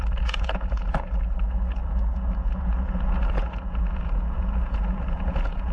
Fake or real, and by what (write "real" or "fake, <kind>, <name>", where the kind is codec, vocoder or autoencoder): fake, vocoder, Vocos